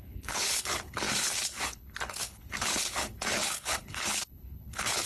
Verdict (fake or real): fake